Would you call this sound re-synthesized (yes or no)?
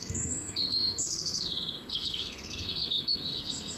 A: yes